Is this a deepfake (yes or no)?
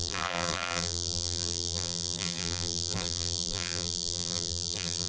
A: yes